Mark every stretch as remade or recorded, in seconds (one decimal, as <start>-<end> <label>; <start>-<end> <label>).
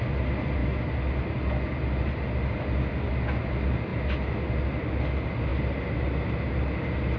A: 0.0-7.2 recorded